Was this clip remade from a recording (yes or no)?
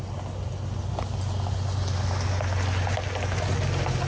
no